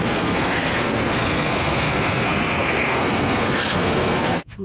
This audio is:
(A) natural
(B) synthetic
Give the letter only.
B